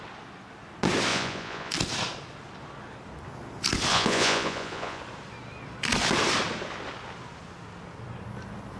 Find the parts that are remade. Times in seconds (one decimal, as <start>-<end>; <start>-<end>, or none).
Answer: 1.1-1.7; 3.9-5.0

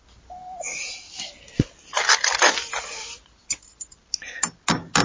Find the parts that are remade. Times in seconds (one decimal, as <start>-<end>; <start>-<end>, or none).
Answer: none

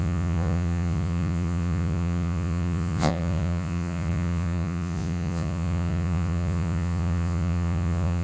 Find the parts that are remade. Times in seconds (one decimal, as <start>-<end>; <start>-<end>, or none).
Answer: 0.0-8.2

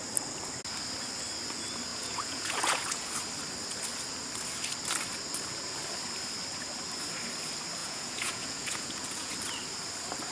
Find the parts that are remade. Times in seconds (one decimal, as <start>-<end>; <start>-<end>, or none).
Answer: 1.9-3.1; 7.8-9.3